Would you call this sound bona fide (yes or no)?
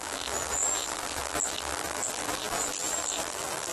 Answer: no